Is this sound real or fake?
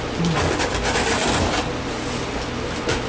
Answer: real